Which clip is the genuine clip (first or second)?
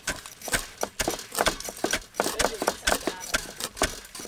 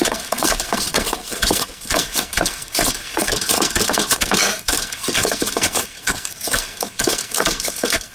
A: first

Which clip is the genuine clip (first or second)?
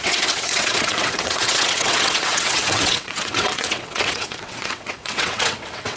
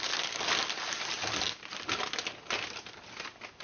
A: second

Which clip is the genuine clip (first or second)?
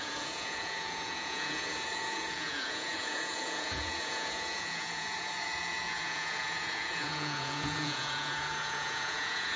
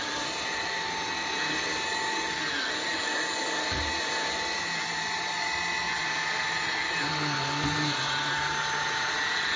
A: second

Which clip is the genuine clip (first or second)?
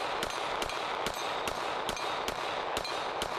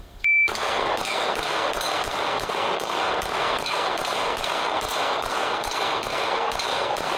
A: first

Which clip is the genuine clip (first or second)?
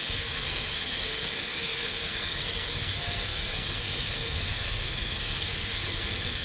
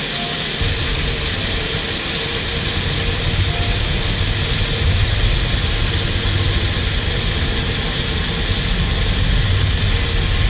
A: second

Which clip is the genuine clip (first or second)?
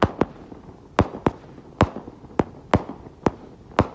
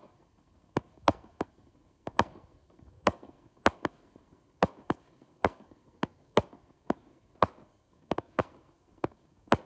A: first